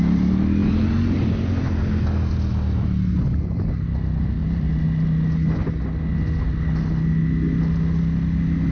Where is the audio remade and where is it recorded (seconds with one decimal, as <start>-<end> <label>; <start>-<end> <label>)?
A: 0.0-8.7 recorded